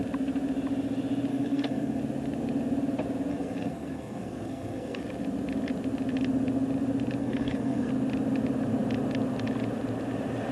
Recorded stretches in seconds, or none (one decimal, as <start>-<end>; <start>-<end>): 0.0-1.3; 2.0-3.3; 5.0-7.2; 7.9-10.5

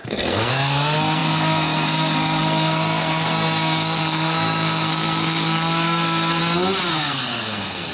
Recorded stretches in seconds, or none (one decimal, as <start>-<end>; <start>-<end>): 6.4-6.9

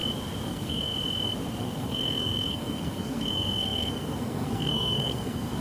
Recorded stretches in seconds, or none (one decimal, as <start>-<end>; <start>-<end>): 0.0-0.5; 0.9-1.6